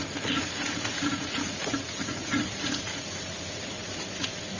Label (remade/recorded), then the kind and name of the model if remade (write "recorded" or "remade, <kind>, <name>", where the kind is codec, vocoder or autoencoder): remade, vocoder, Vocos